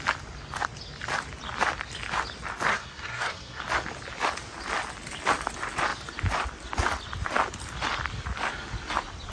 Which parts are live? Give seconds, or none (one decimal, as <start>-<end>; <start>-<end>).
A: 0.0-2.7; 3.6-9.3

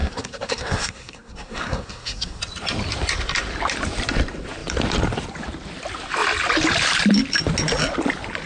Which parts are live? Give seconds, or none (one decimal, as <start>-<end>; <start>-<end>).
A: 2.4-8.5

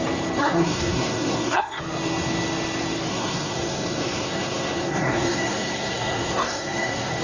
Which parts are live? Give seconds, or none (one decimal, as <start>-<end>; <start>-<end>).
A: 0.0-0.4; 1.8-3.1

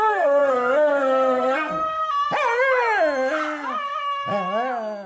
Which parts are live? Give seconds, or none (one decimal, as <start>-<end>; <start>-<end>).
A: 2.0-5.1